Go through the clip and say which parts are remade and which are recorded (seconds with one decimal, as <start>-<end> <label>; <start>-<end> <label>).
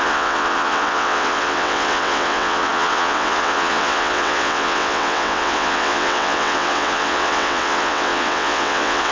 0.0-9.1 remade